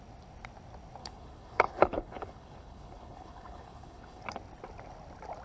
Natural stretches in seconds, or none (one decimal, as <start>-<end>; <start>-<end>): 0.0-1.0; 4.2-5.4